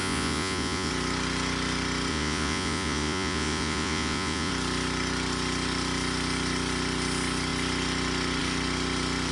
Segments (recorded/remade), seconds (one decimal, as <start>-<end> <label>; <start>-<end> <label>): 0.0-0.9 remade; 0.9-2.1 recorded; 2.1-4.5 remade; 4.5-9.3 recorded